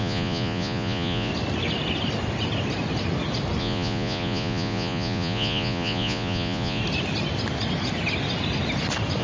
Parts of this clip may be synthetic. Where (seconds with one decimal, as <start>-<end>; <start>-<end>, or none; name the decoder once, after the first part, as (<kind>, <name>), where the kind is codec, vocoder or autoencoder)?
0.0-1.3 (vocoder, Vocos); 3.6-6.8